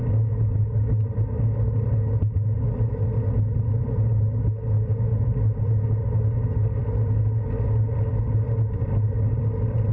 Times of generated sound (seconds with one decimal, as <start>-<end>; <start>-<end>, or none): none